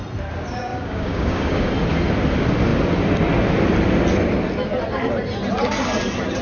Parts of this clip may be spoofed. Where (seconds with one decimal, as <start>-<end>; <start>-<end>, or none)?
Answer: 0.7-1.7